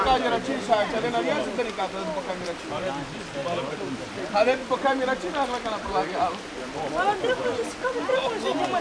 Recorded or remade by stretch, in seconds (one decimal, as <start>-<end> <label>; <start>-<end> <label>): 0.0-8.8 recorded

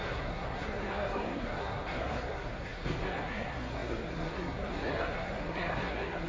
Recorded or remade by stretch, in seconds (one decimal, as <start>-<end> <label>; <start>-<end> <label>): 0.0-6.3 remade

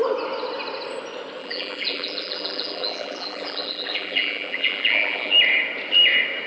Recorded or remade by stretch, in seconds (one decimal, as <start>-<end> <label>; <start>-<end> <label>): 0.0-1.4 recorded; 1.4-5.3 remade; 5.3-6.5 recorded

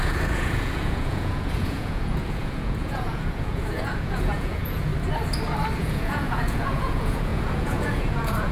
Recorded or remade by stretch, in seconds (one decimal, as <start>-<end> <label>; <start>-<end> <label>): 0.0-4.9 remade; 4.9-5.8 recorded; 5.8-8.5 remade

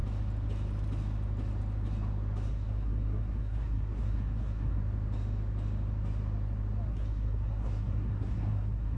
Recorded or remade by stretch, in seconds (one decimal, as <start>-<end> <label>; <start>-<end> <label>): 0.0-2.5 recorded; 2.5-4.8 remade; 4.8-6.9 recorded; 6.9-9.0 remade

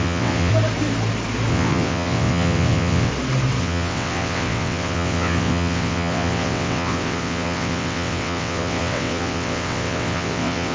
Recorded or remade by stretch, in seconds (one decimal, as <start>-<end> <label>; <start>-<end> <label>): 0.0-0.5 remade; 0.5-1.5 recorded; 1.5-3.1 remade; 3.1-3.6 recorded; 3.6-10.7 remade

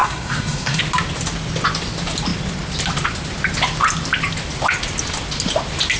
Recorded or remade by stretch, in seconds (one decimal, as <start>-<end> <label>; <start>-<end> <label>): 0.0-0.8 remade; 0.8-6.0 recorded